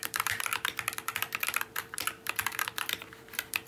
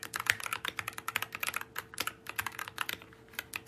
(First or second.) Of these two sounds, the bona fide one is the second